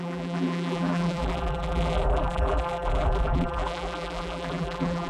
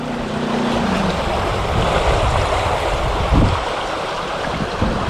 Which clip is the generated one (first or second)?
first